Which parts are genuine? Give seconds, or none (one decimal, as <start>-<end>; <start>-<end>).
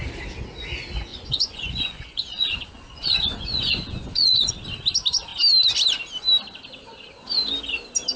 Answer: 0.0-1.1; 4.5-8.2